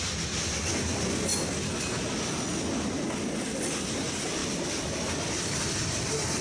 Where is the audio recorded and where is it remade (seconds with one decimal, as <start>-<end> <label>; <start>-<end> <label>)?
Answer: 0.0-6.4 recorded